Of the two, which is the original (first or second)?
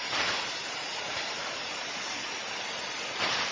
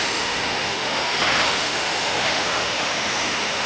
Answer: first